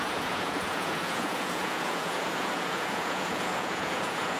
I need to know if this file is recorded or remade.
remade